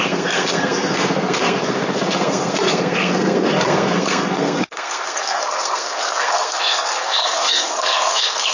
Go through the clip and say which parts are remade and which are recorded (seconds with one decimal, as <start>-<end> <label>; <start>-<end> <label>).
0.0-8.5 remade

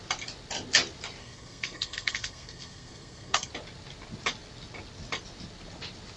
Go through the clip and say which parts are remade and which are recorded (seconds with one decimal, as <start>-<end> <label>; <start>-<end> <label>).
0.0-1.2 recorded; 1.2-3.5 remade; 3.5-6.2 recorded

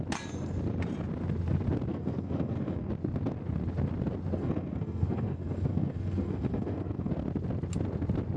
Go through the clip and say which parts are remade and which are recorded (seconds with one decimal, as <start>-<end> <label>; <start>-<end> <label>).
0.0-1.9 recorded; 1.9-2.9 remade; 2.9-4.3 recorded; 4.3-7.1 remade; 7.1-8.4 recorded

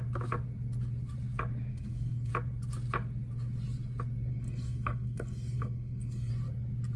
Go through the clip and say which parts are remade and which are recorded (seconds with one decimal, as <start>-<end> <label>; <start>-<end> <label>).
0.0-1.7 recorded; 1.7-2.3 remade; 2.3-4.3 recorded; 4.3-6.3 remade; 6.3-7.0 recorded

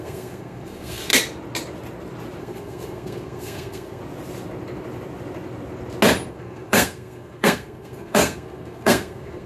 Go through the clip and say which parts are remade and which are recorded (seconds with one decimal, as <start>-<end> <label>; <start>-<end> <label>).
0.0-1.1 remade; 1.1-2.4 recorded; 2.4-4.0 remade; 4.0-6.3 recorded; 6.3-9.5 remade

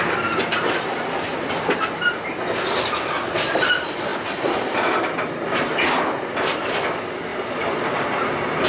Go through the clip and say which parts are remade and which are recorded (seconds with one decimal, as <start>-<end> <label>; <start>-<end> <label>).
0.0-8.7 recorded